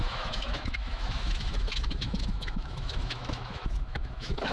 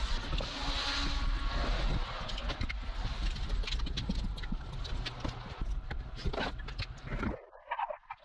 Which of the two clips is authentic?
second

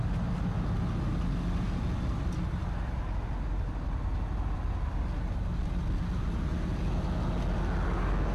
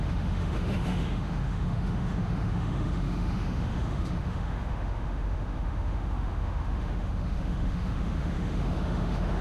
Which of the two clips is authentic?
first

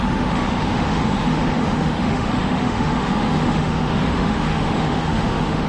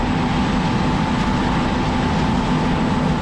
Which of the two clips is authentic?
second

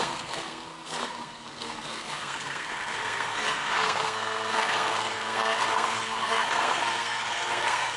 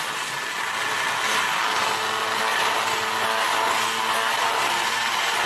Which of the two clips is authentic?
second